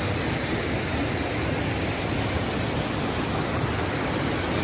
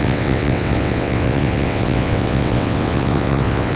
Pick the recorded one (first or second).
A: first